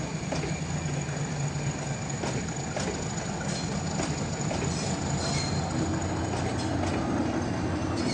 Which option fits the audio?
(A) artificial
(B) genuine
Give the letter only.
B